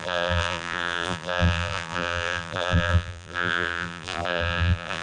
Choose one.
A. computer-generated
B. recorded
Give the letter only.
A